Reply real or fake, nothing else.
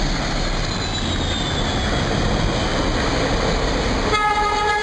real